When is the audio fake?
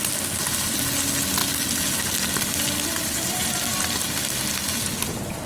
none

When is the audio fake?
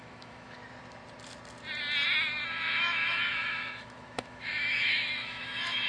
0.0-0.6; 2.5-5.9